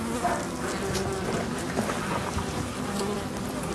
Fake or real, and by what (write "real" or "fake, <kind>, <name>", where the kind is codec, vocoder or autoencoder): real